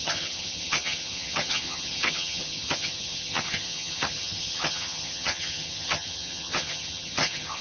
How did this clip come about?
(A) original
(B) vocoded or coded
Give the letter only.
B